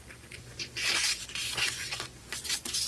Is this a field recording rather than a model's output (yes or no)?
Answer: no